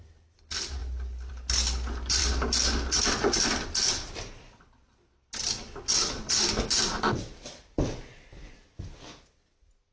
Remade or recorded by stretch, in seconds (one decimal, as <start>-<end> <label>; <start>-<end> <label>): 0.0-9.9 recorded